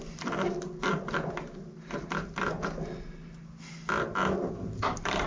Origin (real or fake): real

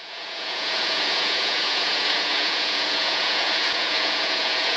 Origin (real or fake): fake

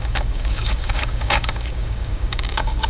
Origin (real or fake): fake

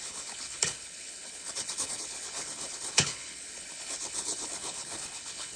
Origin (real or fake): fake